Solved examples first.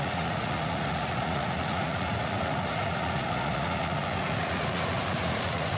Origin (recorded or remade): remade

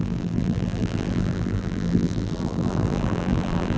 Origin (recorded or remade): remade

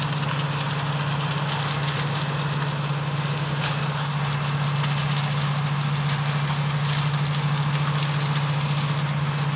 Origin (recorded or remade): recorded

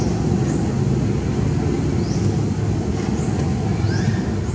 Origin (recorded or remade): recorded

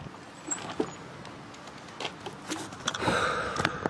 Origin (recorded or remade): recorded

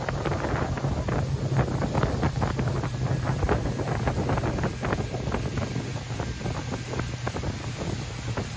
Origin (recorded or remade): recorded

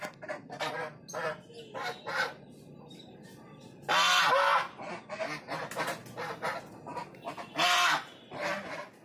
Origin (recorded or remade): recorded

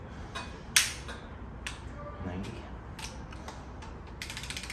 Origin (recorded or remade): recorded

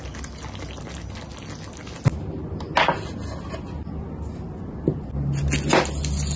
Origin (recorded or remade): recorded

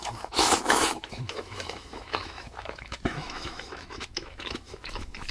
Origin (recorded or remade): remade